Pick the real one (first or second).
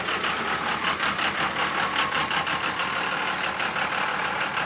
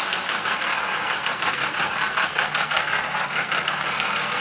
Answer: first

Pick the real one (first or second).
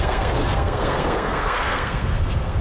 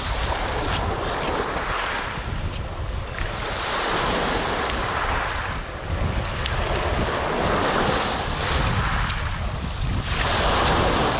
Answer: second